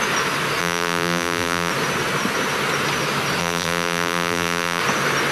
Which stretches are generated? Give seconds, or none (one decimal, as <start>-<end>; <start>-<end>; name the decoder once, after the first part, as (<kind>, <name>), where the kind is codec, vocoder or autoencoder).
0.6-1.7 (vocoder, BigVGAN v2); 3.4-4.8